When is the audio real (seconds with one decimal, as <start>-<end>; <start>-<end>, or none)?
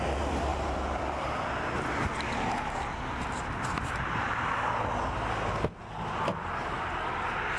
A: 0.0-7.6